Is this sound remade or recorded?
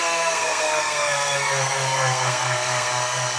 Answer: remade